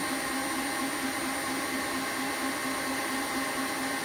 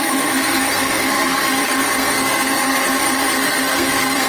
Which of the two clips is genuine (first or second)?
first